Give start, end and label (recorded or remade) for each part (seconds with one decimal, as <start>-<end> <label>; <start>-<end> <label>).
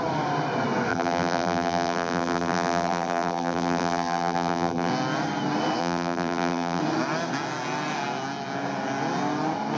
0.0-0.9 recorded; 0.9-4.9 remade; 4.9-5.8 recorded; 5.8-6.8 remade; 6.8-9.8 recorded